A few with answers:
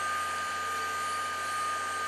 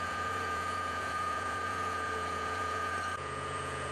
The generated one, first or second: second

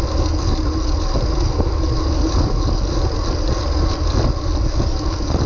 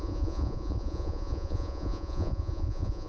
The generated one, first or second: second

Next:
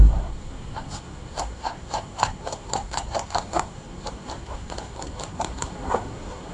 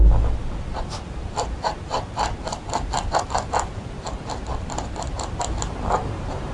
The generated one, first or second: first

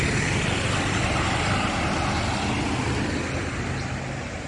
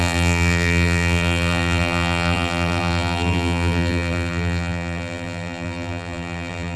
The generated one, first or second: second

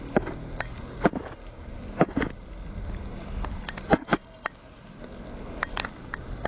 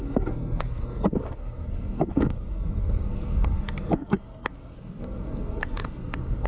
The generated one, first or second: second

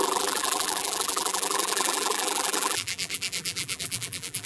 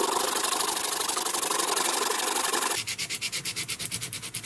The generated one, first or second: first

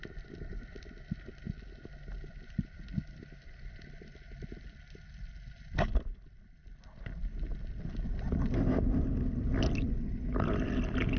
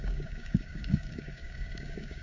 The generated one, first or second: second